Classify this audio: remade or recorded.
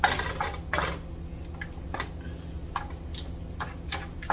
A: recorded